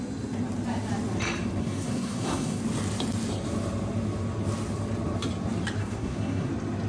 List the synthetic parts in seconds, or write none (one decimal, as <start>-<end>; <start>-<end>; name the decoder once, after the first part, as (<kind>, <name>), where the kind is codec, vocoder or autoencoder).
1.6-2.6 (codec, SNAC); 5.8-6.5